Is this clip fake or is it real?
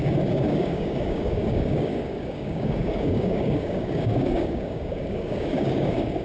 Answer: fake